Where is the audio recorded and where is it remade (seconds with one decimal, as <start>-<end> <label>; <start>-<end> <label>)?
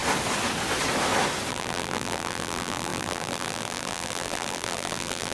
0.0-1.5 recorded; 1.5-5.3 remade